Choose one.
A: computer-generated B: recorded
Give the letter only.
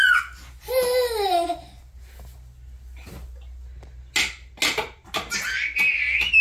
B